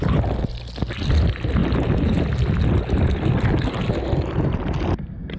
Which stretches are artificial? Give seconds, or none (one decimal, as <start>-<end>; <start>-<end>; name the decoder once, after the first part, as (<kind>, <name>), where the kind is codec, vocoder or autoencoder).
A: none